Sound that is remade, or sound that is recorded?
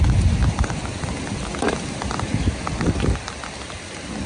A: recorded